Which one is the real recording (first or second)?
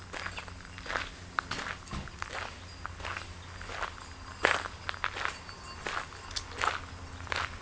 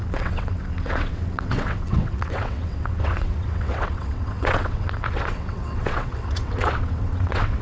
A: first